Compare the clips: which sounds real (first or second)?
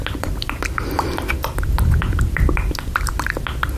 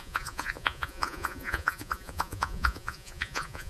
first